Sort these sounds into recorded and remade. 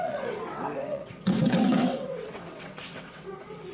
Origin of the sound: remade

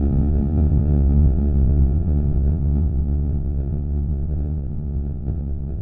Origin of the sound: remade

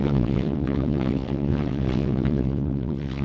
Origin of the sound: remade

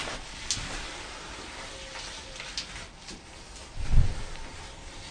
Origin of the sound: recorded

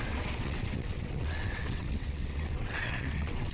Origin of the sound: remade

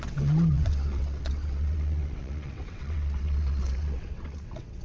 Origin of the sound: remade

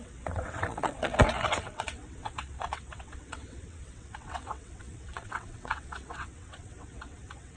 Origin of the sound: remade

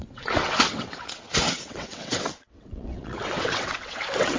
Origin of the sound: remade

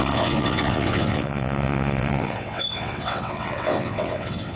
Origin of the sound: remade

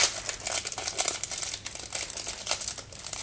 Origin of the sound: recorded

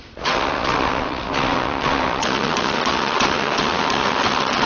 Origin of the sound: remade